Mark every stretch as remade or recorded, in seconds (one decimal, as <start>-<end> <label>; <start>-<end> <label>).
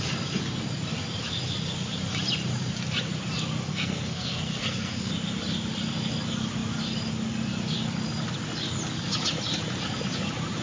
0.0-3.7 recorded; 3.7-5.1 remade; 5.1-10.6 recorded